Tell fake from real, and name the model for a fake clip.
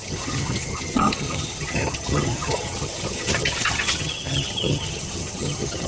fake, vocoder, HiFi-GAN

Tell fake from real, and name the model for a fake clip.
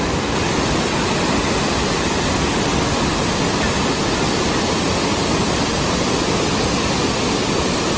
real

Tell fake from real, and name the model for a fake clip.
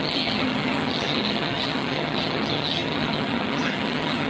fake, vocoder, HiFi-GAN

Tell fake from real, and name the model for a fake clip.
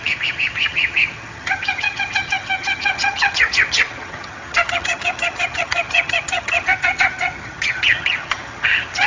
fake, vocoder, HiFi-GAN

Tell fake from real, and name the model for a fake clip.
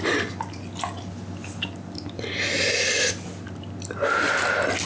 real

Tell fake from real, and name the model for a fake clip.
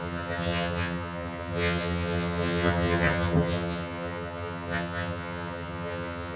fake, vocoder, HiFi-GAN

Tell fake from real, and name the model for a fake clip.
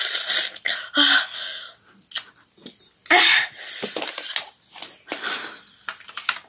real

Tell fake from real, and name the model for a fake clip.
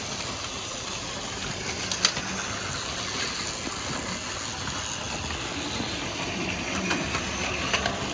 real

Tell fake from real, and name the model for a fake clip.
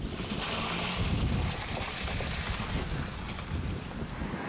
real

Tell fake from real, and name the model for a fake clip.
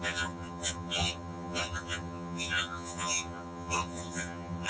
fake, vocoder, HiFi-GAN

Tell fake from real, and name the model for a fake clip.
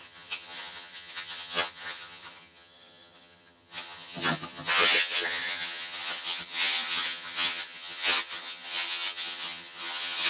fake, vocoder, HiFi-GAN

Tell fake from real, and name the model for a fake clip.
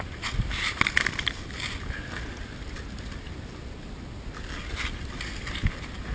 real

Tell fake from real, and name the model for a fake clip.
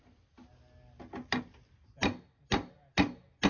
real